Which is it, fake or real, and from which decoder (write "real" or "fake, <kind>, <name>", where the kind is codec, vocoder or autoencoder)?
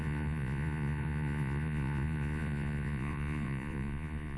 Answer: fake, vocoder, Vocos